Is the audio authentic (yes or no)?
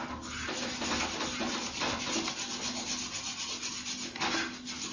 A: yes